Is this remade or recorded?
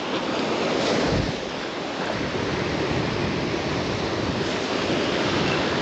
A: recorded